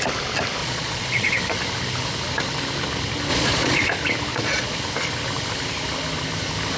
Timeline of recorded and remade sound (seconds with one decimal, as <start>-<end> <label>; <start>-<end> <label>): 0.0-0.6 recorded; 0.6-1.3 remade; 1.3-3.3 recorded; 3.3-3.9 remade; 3.9-4.3 recorded; 4.3-4.8 remade; 4.8-6.8 recorded